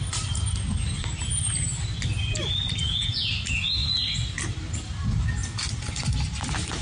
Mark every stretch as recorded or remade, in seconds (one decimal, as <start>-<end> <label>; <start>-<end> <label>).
0.0-2.8 recorded; 2.8-3.3 remade; 3.3-6.8 recorded